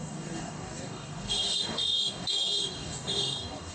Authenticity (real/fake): fake